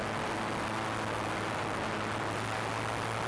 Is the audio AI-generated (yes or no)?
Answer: no